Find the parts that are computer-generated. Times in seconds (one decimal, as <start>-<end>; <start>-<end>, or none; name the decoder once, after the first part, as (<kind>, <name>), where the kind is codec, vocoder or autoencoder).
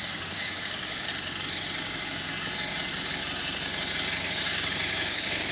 0.0-1.1 (codec, DAC); 1.8-2.3; 4.2-5.5